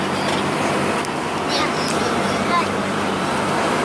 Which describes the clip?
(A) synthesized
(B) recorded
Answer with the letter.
A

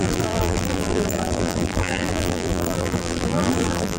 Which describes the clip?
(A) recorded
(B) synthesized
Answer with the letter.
B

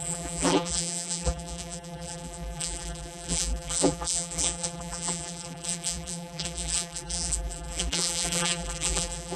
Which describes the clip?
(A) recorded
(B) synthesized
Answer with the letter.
B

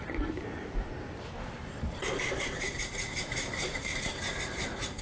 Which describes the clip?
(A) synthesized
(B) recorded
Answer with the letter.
A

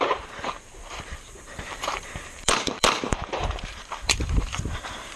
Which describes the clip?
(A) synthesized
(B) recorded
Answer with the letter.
A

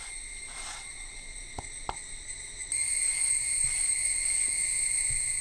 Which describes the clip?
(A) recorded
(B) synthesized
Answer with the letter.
A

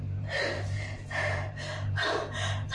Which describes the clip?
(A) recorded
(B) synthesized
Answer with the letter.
B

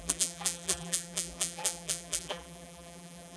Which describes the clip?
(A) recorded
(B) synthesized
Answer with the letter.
B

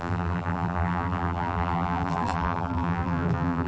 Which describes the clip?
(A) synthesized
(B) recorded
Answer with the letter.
A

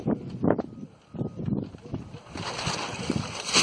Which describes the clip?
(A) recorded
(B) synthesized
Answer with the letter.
A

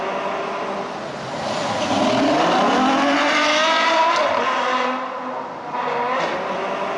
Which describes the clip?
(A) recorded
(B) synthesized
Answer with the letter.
A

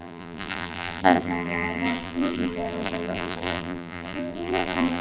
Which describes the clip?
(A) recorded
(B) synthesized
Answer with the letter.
B